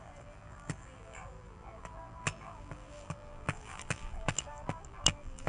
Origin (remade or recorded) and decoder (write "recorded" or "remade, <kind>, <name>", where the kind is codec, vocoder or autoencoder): remade, vocoder, BigVGAN v2